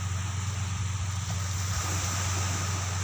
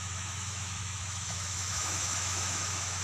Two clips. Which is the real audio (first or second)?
first